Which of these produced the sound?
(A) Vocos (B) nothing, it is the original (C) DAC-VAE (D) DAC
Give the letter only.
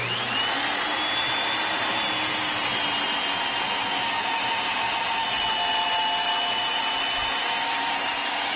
B